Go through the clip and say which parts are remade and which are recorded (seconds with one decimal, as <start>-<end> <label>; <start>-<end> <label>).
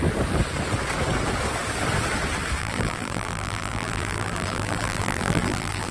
0.0-2.6 recorded; 2.6-5.9 remade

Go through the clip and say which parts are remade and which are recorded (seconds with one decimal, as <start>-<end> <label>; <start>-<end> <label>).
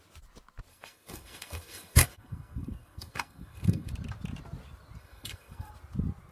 0.0-0.7 recorded; 0.7-3.9 remade; 3.9-5.0 recorded; 5.0-5.7 remade; 5.7-6.3 recorded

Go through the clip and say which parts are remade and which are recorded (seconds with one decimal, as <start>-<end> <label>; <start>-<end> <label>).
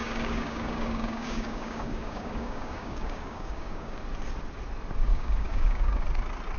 0.0-4.0 remade; 4.0-5.1 recorded; 5.1-6.0 remade; 6.0-6.6 recorded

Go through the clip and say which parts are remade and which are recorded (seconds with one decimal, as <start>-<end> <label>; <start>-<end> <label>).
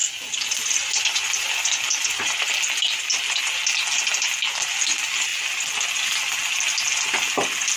0.0-3.0 remade; 3.0-7.8 recorded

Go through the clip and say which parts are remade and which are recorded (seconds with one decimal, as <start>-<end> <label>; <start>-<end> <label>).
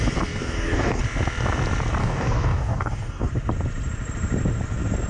0.0-0.4 recorded; 0.4-1.0 remade; 1.0-2.0 recorded; 2.0-3.3 remade; 3.3-5.1 recorded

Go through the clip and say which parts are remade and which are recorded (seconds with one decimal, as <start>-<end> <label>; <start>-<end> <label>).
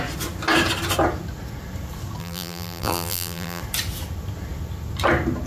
0.0-2.2 recorded; 2.2-3.6 remade; 3.6-5.5 recorded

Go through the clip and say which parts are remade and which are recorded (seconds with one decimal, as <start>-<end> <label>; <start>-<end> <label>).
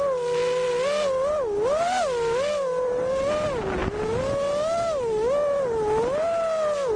0.0-7.0 recorded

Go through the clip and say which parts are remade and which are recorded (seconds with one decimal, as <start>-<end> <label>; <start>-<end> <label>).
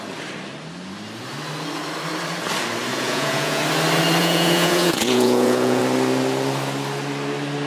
0.0-2.9 recorded; 2.9-3.6 remade; 3.6-4.2 recorded; 4.2-5.8 remade; 5.8-7.7 recorded